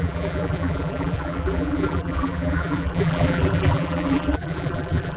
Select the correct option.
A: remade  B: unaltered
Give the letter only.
A